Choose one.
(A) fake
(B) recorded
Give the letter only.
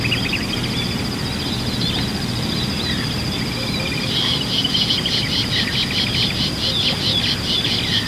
B